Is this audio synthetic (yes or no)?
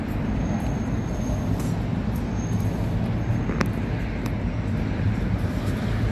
no